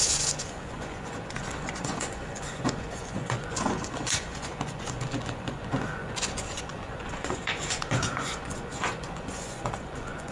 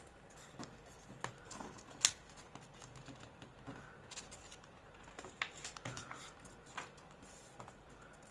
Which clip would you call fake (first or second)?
first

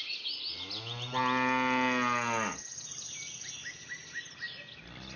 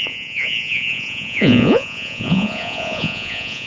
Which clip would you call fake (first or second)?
second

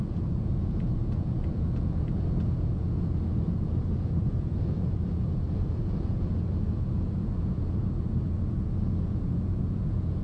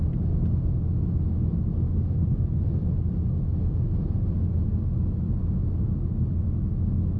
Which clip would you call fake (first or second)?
first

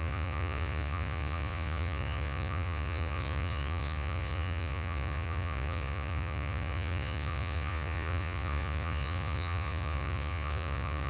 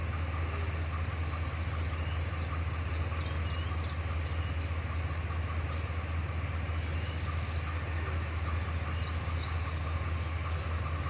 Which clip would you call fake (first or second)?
first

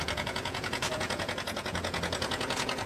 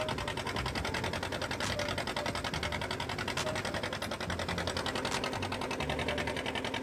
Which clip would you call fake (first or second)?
first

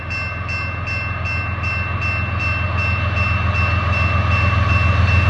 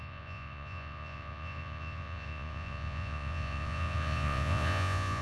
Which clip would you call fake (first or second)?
second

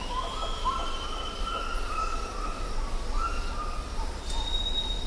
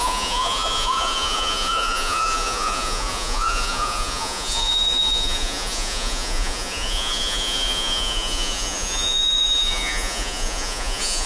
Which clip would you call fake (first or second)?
second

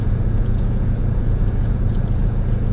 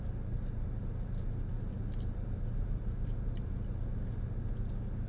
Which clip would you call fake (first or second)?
first